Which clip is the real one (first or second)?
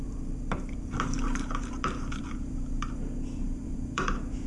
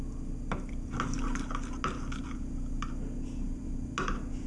second